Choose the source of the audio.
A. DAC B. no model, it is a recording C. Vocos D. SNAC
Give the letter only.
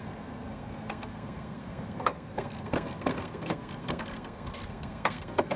D